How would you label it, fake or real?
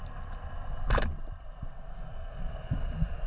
real